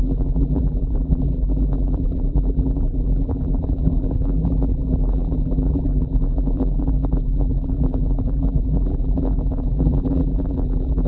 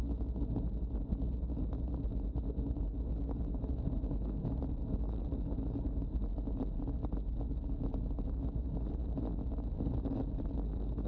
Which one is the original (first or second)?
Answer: second